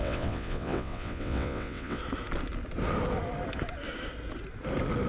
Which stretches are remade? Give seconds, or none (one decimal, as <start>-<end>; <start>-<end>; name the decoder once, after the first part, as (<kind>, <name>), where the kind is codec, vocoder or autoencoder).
0.0-2.0 (vocoder, WaveNeXt)